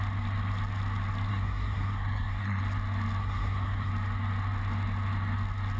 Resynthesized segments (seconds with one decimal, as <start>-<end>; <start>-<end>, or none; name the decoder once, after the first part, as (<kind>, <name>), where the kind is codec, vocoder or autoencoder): 1.3-2.6 (codec, SNAC); 3.2-3.9